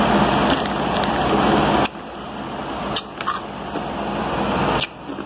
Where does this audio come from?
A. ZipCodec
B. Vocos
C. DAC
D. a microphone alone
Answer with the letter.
D